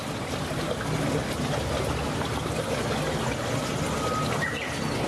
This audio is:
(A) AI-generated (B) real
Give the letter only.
B